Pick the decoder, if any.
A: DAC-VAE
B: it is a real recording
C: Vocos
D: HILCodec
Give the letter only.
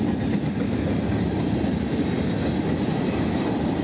B